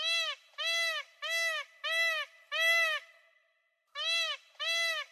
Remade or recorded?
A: recorded